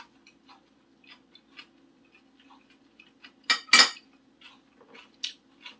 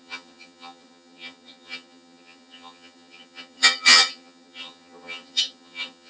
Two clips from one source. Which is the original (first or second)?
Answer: first